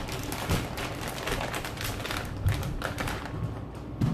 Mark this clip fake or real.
real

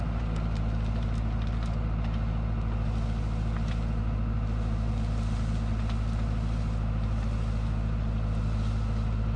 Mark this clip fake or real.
real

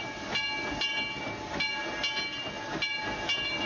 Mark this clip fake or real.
real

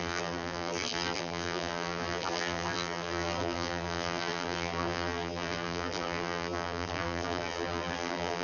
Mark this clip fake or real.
fake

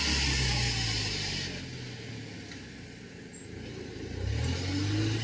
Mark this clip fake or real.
real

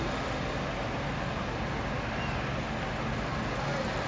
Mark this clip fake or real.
real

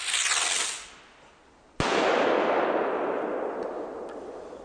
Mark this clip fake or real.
real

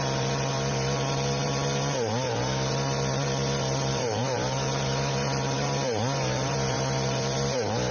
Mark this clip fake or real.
fake